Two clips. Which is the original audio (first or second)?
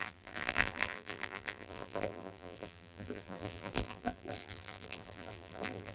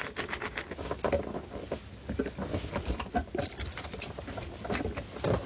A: second